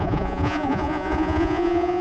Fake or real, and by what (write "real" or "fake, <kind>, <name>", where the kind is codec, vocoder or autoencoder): fake, vocoder, Vocos